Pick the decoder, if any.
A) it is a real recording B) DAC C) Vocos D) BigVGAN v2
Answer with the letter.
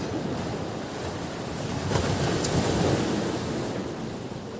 A